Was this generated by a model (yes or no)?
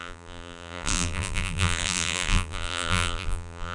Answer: yes